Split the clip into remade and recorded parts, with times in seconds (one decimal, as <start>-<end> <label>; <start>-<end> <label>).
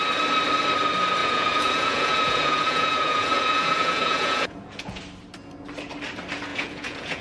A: 0.0-1.2 recorded; 1.2-5.0 remade; 5.0-6.5 recorded; 6.5-7.2 remade